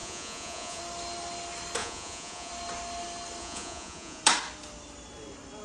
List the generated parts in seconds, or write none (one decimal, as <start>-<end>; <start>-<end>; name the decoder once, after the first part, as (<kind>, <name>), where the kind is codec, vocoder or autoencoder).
0.0-0.8 (vocoder, Vocos); 1.8-2.5; 3.4-4.2